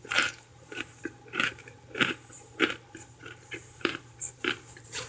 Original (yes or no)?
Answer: no